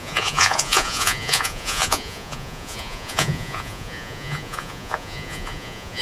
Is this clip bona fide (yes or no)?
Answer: no